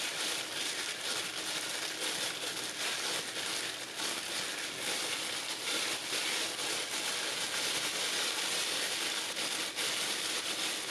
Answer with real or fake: real